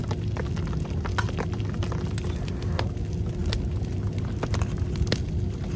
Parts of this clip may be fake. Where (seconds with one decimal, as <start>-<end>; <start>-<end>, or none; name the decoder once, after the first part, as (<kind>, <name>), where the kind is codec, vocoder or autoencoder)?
none